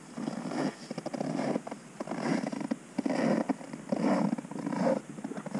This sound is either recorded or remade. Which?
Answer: recorded